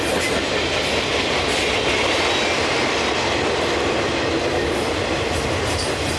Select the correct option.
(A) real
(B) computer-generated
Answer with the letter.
A